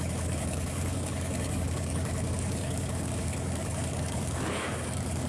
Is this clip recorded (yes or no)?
no